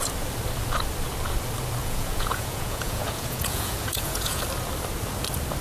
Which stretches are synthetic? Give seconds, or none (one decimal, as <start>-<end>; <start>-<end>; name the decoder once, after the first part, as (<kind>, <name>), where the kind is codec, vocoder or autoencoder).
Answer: 1.8-4.4 (vocoder, Vocos)